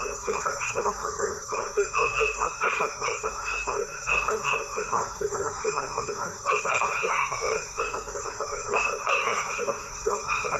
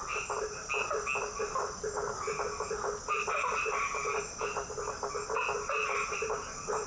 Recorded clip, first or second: second